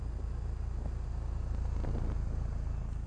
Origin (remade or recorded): recorded